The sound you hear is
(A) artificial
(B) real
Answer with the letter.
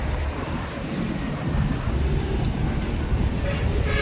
B